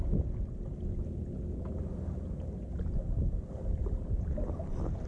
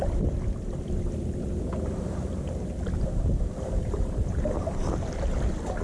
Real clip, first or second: first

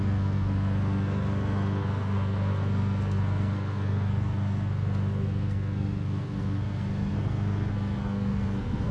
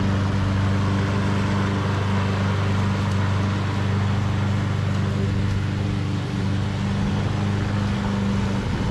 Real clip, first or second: second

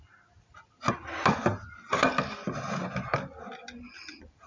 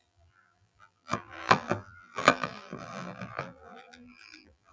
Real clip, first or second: first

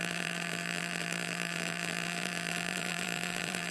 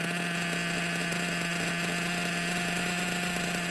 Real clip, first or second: second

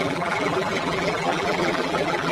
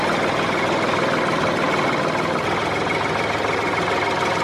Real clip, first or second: second